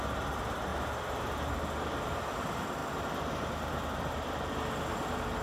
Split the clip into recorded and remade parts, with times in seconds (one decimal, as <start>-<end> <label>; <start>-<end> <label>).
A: 0.0-5.4 recorded